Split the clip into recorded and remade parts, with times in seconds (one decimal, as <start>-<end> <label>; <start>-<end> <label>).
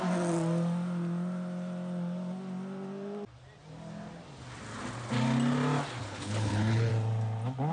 0.0-6.0 recorded; 6.0-6.9 remade; 6.9-7.7 recorded